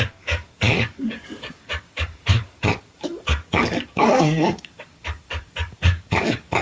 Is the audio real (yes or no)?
no